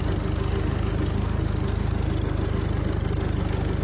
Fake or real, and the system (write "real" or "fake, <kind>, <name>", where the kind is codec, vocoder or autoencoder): real